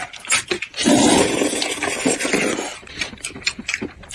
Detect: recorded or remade recorded